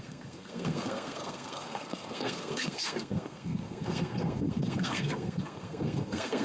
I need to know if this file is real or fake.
fake